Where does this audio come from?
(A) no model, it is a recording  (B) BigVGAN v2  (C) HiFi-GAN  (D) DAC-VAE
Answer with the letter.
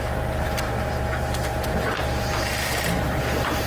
B